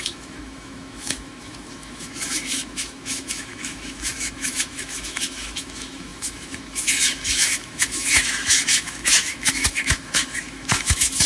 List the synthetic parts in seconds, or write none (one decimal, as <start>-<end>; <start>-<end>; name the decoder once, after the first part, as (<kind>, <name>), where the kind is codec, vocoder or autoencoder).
0.0-11.3 (autoencoder, DAC-VAE)